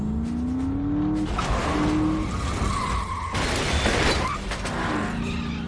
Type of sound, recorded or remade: recorded